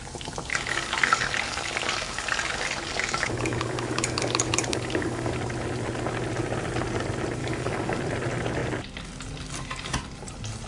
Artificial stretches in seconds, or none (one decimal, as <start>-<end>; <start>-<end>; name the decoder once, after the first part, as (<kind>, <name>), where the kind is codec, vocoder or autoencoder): 0.5-5.4 (codec, DAC); 7.4-8.0